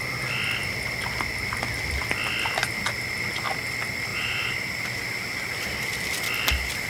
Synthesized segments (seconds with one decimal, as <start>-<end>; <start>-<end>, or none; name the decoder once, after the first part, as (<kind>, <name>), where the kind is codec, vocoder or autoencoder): 4.1-5.0 (vocoder, BigVGAN v2)